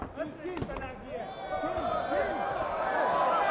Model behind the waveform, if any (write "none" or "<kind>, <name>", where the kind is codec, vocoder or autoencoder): none